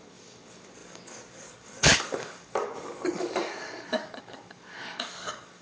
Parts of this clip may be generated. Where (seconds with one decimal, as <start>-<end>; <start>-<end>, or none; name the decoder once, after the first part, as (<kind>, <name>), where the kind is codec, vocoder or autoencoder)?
0.0-5.6 (codec, DAC)